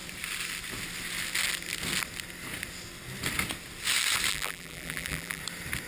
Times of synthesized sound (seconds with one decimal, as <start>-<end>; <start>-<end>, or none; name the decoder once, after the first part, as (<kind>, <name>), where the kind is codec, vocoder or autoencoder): 4.3-5.4 (vocoder, BigVGAN v2)